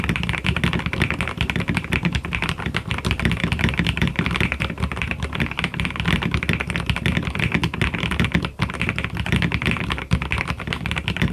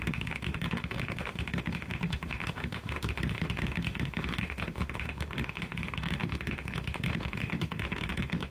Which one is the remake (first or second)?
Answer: second